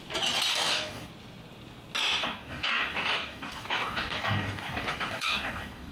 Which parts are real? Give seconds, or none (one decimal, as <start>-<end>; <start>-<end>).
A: 0.0-0.5; 1.1-2.2

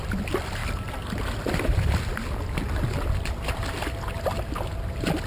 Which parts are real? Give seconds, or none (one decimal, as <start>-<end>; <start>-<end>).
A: 0.0-5.3

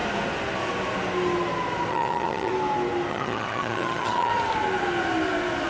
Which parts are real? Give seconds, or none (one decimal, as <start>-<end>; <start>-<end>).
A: 0.0-1.9; 2.5-3.1; 4.3-5.7

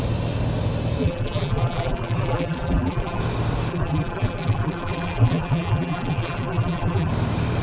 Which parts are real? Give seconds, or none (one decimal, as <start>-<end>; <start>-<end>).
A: 0.0-1.0; 3.2-3.7; 7.1-7.6